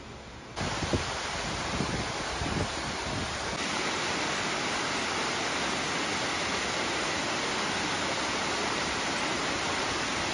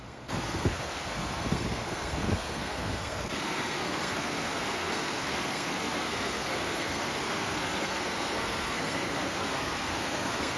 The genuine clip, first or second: first